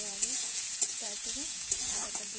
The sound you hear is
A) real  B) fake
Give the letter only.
B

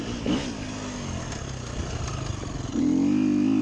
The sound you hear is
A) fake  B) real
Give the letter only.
B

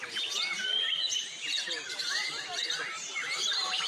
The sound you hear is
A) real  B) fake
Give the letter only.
A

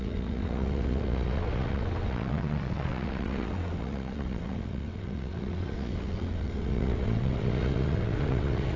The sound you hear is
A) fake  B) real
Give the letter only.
A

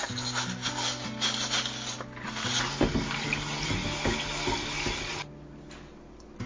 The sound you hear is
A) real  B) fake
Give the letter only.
A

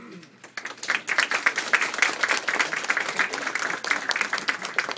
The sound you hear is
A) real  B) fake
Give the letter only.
A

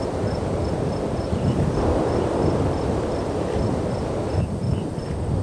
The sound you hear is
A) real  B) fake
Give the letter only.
A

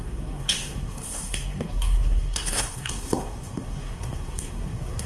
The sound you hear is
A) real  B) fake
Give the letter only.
B